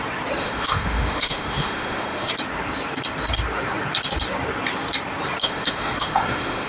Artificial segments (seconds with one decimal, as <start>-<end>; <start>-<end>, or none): 0.4-2.3; 5.4-6.7